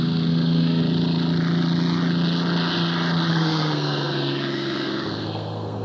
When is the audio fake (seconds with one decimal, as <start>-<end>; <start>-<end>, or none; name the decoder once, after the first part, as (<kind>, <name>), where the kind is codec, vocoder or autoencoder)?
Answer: 0.0-0.8 (codec, SNAC); 3.3-5.8